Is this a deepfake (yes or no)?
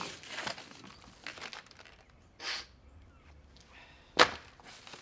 no